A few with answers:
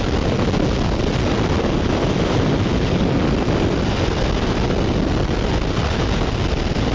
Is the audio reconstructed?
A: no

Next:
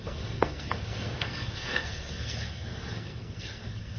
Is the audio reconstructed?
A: yes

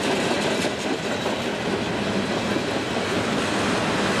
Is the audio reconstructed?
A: no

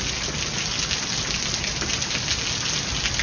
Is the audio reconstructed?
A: no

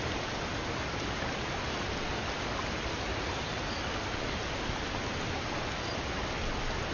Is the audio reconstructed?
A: no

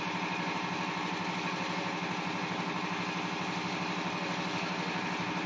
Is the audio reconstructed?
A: no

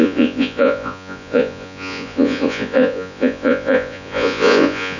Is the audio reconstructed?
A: yes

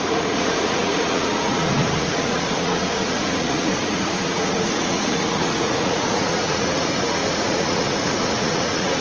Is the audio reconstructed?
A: yes